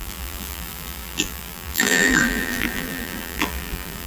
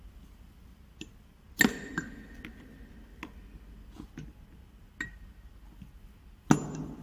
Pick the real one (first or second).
second